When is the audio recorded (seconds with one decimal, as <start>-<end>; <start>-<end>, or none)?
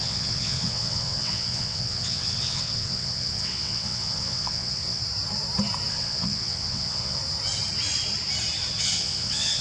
5.0-5.9; 7.2-8.8